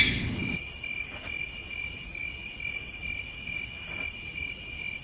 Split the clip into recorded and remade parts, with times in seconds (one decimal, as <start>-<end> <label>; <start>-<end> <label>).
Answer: 0.0-5.0 recorded